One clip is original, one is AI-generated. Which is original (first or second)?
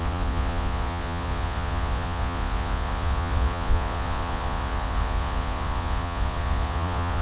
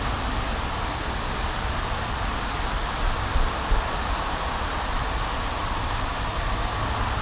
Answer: second